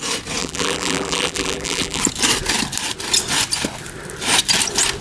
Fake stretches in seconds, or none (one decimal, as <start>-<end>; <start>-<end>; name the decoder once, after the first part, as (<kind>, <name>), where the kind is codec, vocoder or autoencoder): 0.4-2.0 (vocoder, BigVGAN v2)